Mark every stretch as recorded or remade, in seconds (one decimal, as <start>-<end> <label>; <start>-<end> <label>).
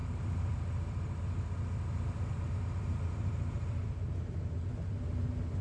0.0-5.6 recorded